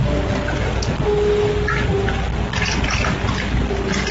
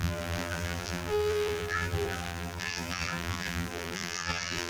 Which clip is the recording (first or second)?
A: first